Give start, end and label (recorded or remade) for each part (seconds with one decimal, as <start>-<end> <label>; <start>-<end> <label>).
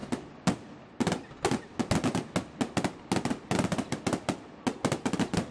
0.0-5.5 recorded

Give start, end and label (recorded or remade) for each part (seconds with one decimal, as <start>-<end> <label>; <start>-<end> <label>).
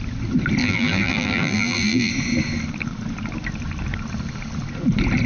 0.0-0.6 recorded; 0.6-2.1 remade; 2.1-5.3 recorded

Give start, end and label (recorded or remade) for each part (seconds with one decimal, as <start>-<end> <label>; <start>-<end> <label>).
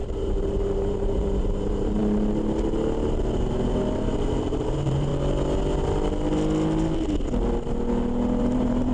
0.0-2.0 remade; 2.0-3.4 recorded; 3.4-5.1 remade; 5.1-8.4 recorded; 8.4-8.9 remade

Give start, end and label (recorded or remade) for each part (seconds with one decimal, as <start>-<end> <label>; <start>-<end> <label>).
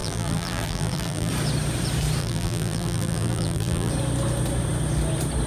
0.0-1.3 remade; 1.3-2.2 recorded; 2.2-3.9 remade; 3.9-5.5 recorded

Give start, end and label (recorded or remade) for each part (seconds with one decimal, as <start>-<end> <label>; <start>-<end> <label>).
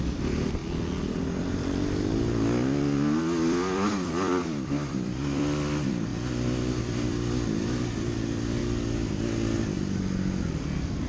0.0-0.6 remade; 0.6-1.2 recorded; 1.2-2.1 remade; 2.1-3.2 recorded; 3.2-6.1 remade; 6.1-6.8 recorded; 6.8-8.6 remade; 8.6-10.5 recorded; 10.5-11.1 remade